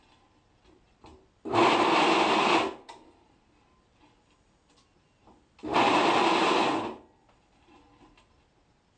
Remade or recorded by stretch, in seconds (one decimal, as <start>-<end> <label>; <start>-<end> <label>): 0.0-9.0 recorded